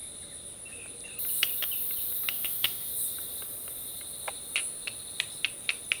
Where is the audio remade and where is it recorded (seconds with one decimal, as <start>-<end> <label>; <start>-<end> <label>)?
0.0-2.3 recorded; 2.3-2.9 remade; 2.9-6.0 recorded